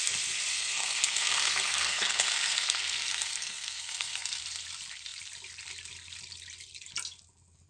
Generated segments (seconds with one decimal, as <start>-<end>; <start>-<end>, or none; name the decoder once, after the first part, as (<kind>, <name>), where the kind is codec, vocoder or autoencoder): 0.5-4.4 (codec, SNAC)